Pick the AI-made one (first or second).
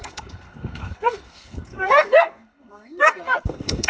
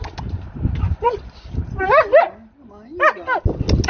first